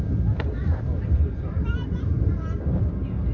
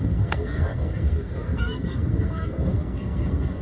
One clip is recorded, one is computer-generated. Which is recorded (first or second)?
first